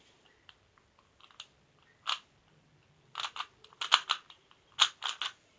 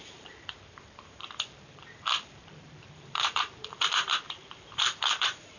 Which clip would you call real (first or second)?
first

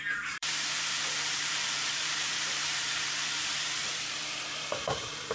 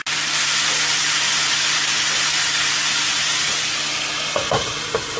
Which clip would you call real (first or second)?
second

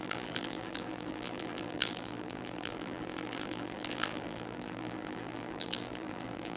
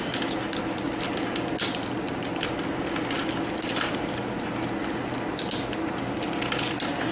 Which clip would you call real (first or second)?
second